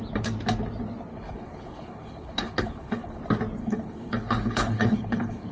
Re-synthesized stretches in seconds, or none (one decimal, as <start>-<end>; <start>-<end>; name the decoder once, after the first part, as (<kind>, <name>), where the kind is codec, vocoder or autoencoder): 1.1-3.2 (codec, HILCodec); 3.6-5.5